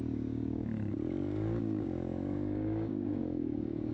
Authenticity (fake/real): fake